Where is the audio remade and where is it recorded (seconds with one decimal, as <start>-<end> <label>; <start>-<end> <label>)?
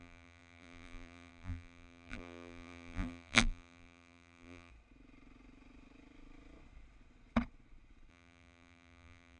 0.0-4.7 remade; 4.7-8.1 recorded; 8.1-9.4 remade